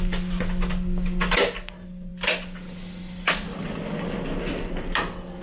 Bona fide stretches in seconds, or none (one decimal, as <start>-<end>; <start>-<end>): 0.0-5.4